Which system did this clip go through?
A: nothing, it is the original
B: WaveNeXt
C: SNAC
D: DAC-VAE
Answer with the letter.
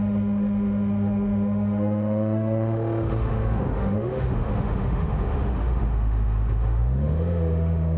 D